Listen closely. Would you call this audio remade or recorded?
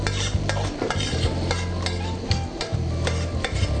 recorded